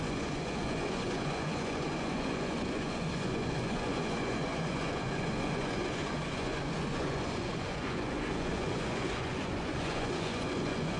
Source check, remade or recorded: remade